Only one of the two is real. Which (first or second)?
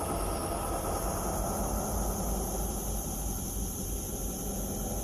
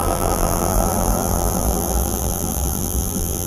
first